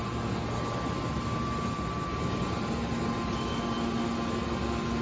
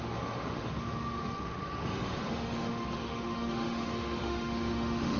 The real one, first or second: first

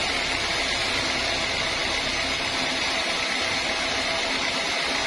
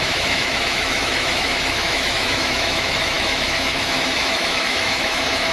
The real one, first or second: first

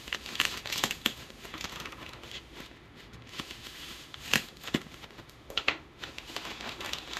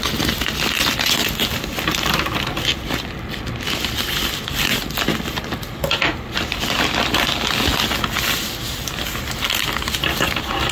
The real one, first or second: second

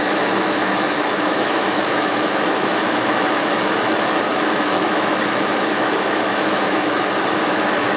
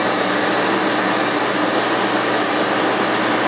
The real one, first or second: second